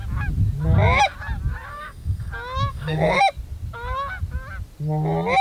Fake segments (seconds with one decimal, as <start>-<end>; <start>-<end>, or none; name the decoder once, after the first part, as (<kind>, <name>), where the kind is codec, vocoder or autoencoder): 1.7-2.3 (codec, SNAC); 2.7-3.2